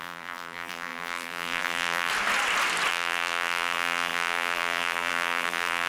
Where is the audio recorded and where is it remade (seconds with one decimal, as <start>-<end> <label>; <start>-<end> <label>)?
0.0-2.1 remade; 2.1-2.9 recorded; 2.9-5.9 remade